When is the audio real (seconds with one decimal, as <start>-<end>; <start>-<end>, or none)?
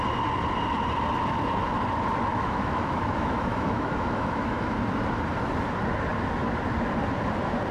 0.0-2.3; 4.8-7.7